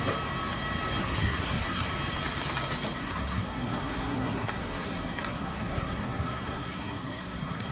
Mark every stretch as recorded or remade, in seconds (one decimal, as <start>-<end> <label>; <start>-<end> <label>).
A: 0.0-1.0 recorded; 1.0-1.9 remade; 1.9-3.0 recorded; 3.0-7.7 remade